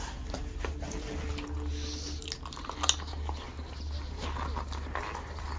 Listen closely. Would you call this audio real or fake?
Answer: real